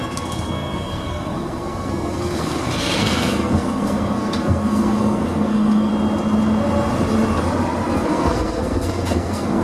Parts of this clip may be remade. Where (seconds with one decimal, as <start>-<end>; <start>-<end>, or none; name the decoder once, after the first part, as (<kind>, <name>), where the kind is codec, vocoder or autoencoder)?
0.0-5.9 (codec, SNAC); 7.9-9.6